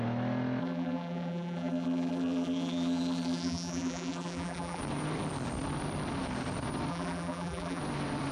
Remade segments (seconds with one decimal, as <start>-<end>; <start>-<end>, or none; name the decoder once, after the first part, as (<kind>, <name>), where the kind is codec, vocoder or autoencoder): 0.6-4.8 (vocoder, BigVGAN v2); 6.9-7.8